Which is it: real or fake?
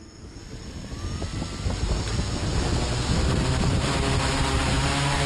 real